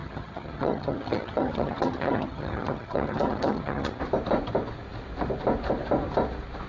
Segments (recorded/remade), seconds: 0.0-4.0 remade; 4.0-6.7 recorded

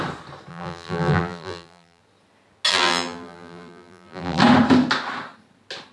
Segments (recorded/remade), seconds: 0.0-0.5 recorded; 0.5-2.0 remade; 2.0-2.7 recorded; 2.7-4.4 remade; 4.4-5.9 recorded